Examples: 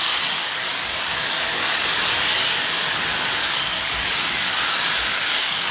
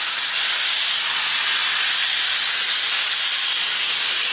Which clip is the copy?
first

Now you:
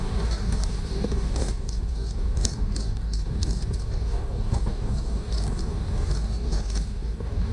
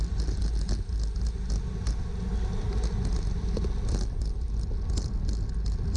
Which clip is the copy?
first